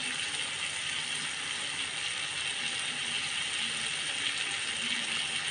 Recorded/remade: recorded